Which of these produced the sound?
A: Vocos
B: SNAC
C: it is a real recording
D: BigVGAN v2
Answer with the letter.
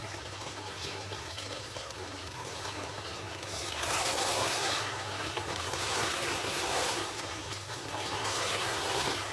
B